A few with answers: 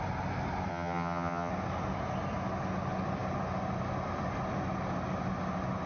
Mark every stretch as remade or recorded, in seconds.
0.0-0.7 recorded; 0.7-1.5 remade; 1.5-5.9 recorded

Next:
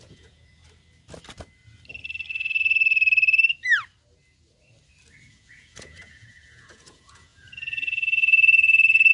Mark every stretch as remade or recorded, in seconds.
0.0-0.6 remade; 0.6-5.3 recorded; 5.3-9.1 remade

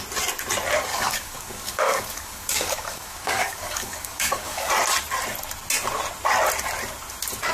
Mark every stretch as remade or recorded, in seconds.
0.0-0.9 recorded; 0.9-4.7 remade; 4.7-7.5 recorded

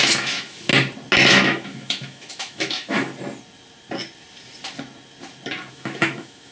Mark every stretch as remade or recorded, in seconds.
0.0-0.7 remade; 0.7-1.3 recorded; 1.3-3.1 remade; 3.1-5.7 recorded; 5.7-6.5 remade

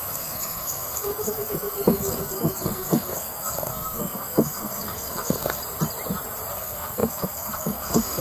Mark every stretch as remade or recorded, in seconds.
0.0-5.6 remade; 5.6-6.5 recorded; 6.5-8.2 remade

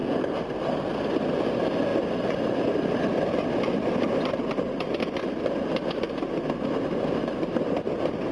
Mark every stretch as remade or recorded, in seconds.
0.0-8.3 recorded